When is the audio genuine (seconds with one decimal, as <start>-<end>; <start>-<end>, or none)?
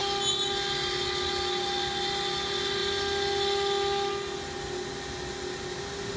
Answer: 0.0-6.2